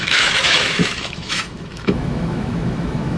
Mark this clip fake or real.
fake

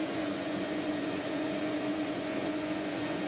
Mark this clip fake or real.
fake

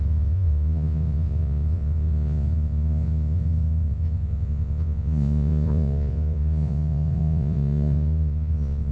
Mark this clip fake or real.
fake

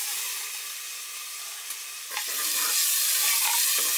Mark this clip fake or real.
real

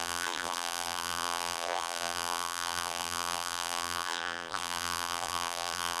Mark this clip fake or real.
fake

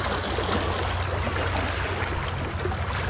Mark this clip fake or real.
real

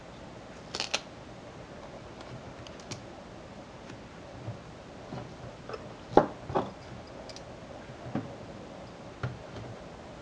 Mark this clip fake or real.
real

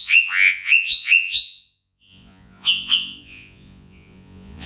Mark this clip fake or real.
fake